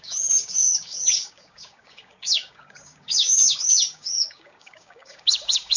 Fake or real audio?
fake